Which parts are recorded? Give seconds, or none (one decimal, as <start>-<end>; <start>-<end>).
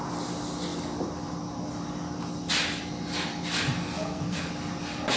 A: 0.0-3.8; 4.5-5.2